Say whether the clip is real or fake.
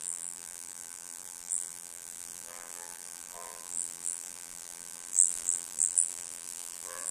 fake